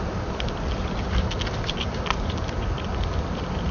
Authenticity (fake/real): real